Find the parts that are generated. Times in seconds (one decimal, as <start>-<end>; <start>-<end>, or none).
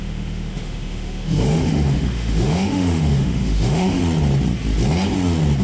0.0-4.0